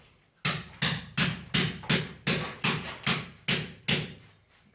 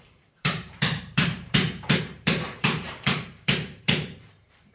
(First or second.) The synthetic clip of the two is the second